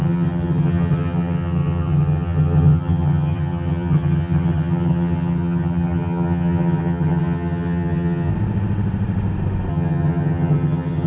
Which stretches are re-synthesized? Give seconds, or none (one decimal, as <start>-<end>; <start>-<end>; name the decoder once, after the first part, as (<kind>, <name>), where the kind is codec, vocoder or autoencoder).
0.0-8.3 (vocoder, HiFi-GAN); 9.7-11.1